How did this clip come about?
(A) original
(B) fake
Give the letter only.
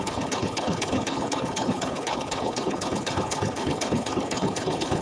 B